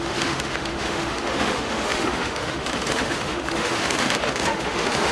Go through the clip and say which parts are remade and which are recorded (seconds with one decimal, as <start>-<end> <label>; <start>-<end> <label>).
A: 0.0-5.1 remade